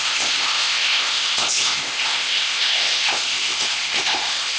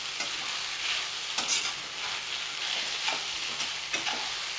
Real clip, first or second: second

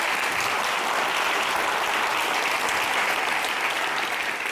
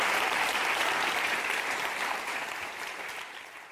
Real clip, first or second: first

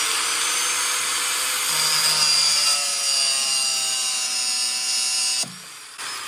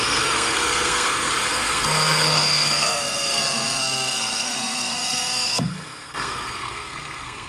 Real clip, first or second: first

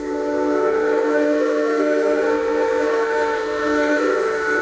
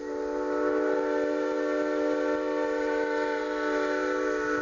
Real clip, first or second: second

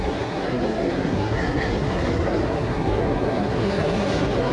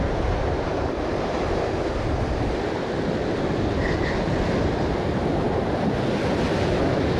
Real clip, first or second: second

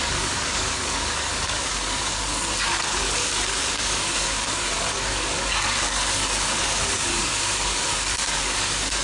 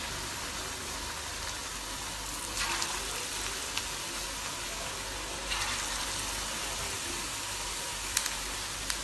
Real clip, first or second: second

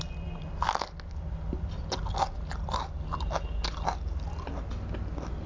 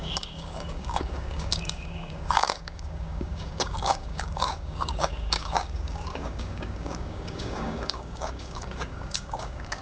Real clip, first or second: first